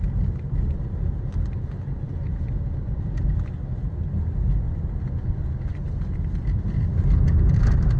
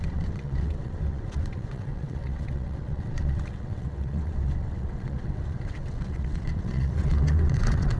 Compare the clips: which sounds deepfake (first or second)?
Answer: second